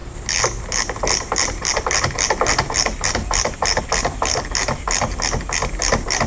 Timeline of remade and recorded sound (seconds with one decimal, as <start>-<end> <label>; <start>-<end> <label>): 0.0-6.3 recorded